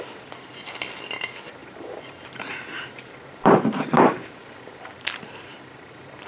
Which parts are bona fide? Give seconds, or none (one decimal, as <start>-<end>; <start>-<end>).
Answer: 0.0-1.6; 4.6-6.3